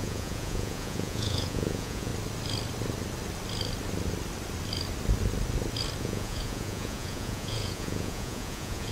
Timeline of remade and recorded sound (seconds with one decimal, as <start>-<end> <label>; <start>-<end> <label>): 0.0-2.1 remade; 2.1-6.0 recorded; 6.0-8.9 remade